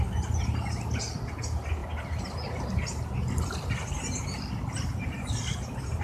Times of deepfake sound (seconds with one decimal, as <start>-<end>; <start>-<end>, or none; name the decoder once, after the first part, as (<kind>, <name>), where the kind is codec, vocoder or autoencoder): none